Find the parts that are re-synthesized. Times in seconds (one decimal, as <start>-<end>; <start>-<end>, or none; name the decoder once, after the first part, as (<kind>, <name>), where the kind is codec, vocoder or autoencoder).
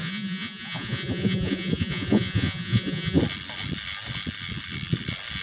0.0-3.2 (vocoder, Vocos)